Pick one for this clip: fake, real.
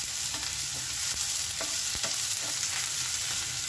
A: real